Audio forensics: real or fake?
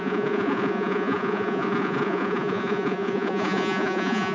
fake